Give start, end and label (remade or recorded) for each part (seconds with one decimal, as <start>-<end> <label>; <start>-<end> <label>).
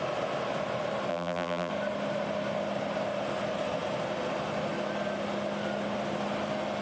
0.0-1.1 recorded; 1.1-1.7 remade; 1.7-6.8 recorded